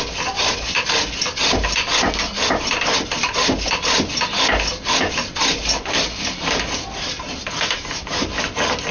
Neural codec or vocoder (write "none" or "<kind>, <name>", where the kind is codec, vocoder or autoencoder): none